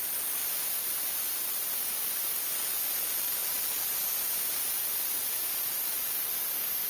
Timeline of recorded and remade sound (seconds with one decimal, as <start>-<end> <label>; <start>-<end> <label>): 0.0-0.4 recorded; 0.4-2.5 remade; 2.5-6.9 recorded

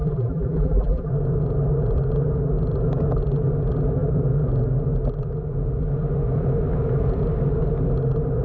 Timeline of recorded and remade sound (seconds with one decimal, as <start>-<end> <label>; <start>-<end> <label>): 0.0-1.1 remade; 1.1-8.4 recorded

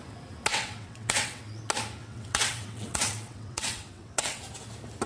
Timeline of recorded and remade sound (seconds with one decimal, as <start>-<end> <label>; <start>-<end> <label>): 0.0-0.5 recorded; 0.5-1.6 remade; 1.6-2.0 recorded; 2.0-4.4 remade; 4.4-5.1 recorded

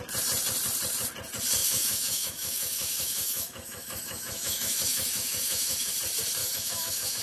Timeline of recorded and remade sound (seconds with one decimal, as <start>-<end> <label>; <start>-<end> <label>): 0.0-1.6 recorded; 1.6-5.9 remade; 5.9-6.4 recorded; 6.4-7.2 remade